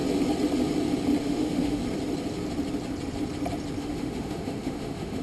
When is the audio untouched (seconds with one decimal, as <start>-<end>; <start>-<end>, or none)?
0.0-1.2; 1.8-3.8